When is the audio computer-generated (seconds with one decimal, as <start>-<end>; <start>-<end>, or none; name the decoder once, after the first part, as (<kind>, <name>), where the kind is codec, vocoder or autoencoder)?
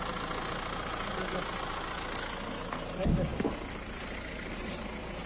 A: 3.3-5.3 (vocoder, BigVGAN v2)